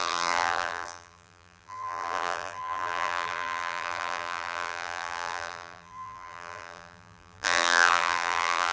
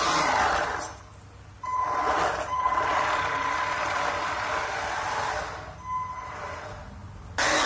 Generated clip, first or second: first